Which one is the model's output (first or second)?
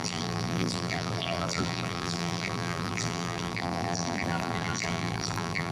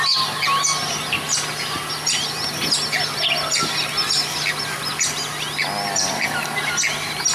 first